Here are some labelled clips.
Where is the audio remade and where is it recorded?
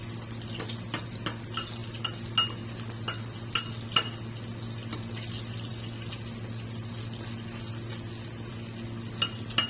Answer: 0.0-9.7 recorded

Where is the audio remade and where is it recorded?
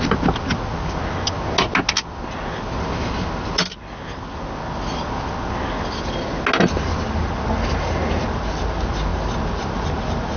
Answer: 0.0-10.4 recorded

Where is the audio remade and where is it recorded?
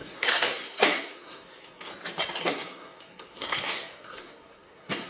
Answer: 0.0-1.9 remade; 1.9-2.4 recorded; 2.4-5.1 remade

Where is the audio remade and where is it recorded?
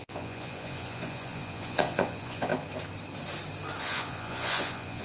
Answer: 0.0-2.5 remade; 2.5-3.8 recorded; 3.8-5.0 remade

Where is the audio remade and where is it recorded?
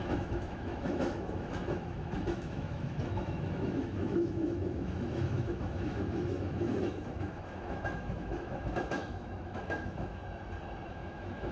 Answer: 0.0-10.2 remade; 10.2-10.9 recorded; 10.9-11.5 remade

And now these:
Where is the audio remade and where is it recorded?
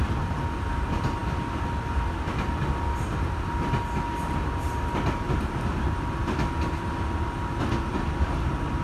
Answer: 0.0-8.8 recorded